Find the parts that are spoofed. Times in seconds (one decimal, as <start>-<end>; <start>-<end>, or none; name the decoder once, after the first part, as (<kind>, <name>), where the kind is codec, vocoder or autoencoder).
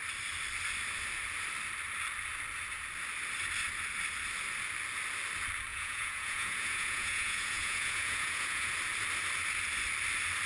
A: 5.7-8.7 (vocoder, Vocos)